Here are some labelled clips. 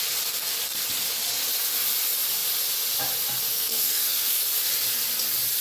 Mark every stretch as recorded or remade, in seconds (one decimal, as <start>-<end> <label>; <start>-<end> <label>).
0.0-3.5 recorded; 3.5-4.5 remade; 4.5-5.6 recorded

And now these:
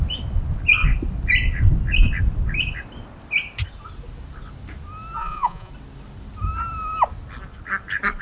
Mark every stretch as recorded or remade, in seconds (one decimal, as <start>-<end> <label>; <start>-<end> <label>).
0.0-5.2 recorded; 5.2-5.7 remade; 5.7-8.2 recorded

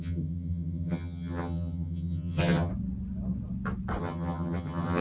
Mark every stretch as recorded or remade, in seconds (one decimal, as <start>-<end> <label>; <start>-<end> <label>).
0.0-2.7 remade; 2.7-4.0 recorded; 4.0-5.0 remade

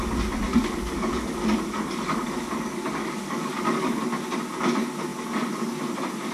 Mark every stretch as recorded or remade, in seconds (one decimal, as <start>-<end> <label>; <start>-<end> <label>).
0.0-0.5 recorded; 0.5-4.0 remade; 4.0-6.3 recorded